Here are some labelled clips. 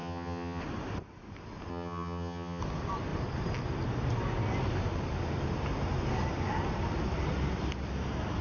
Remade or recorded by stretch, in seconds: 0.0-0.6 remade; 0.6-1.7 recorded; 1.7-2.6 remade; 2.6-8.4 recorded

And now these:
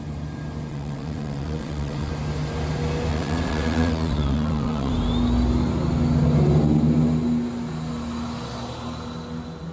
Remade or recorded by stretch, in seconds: 0.0-0.7 recorded; 0.7-2.1 remade; 2.1-3.1 recorded; 3.1-4.9 remade; 4.9-9.7 recorded

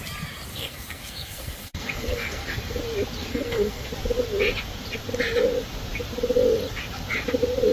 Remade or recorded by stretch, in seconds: 0.0-0.5 recorded; 0.5-2.8 remade; 2.8-3.2 recorded; 3.2-3.9 remade; 3.9-7.7 recorded

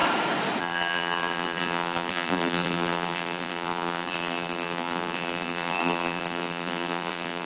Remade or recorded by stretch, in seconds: 0.0-0.6 recorded; 0.6-7.5 remade

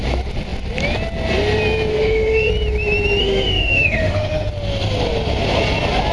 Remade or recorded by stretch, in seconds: 0.0-1.9 recorded; 1.9-2.5 remade; 2.5-3.2 recorded; 3.2-4.5 remade; 4.5-6.1 recorded